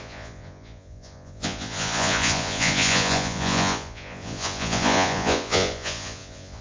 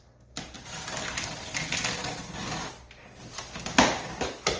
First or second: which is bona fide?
second